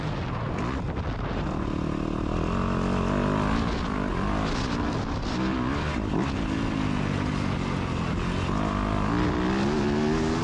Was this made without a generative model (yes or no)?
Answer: yes